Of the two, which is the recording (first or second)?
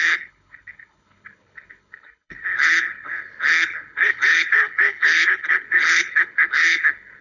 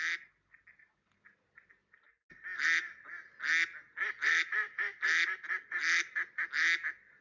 second